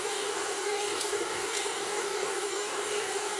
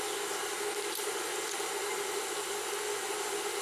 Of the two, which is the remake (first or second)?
first